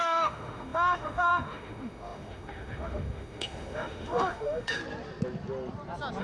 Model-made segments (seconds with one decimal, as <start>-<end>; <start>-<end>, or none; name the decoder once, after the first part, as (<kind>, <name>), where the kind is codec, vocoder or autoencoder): 0.0-4.8 (autoencoder, DAC-VAE)